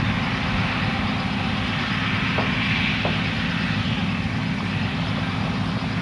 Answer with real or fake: real